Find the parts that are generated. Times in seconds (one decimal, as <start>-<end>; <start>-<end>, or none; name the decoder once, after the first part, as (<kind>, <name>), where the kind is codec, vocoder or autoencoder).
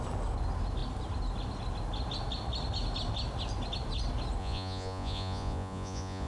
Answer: 4.4-6.3 (vocoder, Vocos)